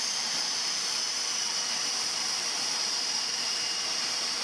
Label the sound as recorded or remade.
remade